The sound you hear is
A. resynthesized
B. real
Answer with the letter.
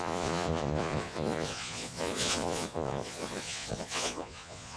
A